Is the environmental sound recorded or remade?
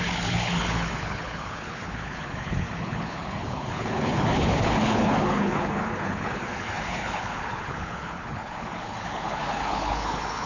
remade